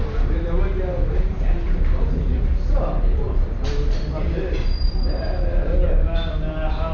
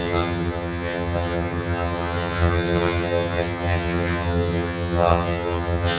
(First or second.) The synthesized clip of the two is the second